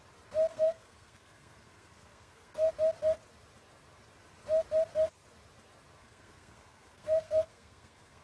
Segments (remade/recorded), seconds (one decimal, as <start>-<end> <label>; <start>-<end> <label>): 0.0-0.5 recorded; 0.5-2.7 remade; 2.7-6.0 recorded; 6.0-8.2 remade